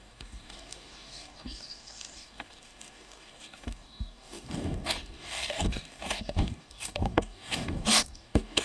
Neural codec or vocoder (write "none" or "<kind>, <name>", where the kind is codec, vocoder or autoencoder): codec, DAC